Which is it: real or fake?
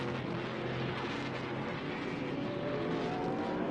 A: real